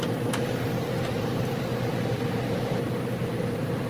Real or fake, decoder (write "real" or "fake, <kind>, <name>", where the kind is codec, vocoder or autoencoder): real